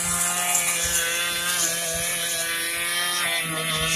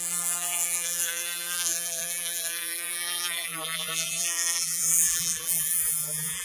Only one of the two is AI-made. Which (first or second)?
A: second